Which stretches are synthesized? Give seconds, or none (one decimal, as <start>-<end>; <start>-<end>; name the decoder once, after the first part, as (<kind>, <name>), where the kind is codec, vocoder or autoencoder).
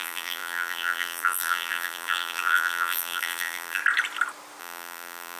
0.0-3.8 (vocoder, BigVGAN v2); 4.6-5.4